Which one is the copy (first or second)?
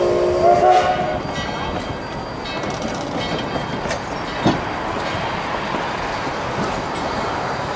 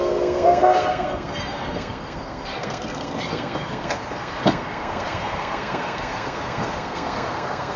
second